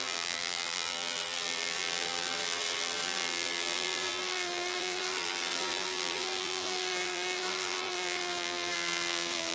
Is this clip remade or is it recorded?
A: remade